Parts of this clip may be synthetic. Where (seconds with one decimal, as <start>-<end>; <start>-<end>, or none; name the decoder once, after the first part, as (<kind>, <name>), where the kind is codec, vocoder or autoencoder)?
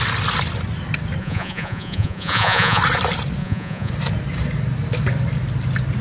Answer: 1.2-2.8 (vocoder, Vocos); 3.4-3.9